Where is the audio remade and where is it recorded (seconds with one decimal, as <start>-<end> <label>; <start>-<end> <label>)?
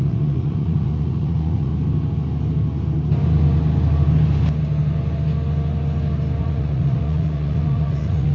0.0-1.7 remade; 1.7-6.4 recorded; 6.4-8.3 remade